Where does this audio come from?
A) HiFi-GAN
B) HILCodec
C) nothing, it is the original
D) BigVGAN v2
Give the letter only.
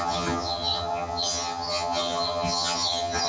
A